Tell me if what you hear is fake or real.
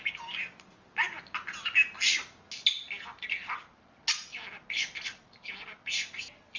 real